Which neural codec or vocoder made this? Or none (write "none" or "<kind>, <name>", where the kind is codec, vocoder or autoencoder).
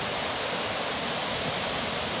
none